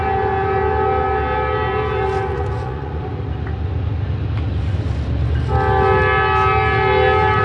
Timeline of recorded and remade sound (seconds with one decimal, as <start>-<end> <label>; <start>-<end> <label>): 0.0-2.3 recorded; 2.3-3.0 remade; 3.0-7.4 recorded